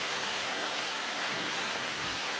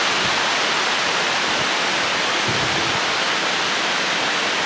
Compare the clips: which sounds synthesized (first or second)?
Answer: first